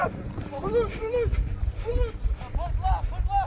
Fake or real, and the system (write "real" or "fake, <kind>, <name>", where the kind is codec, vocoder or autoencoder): real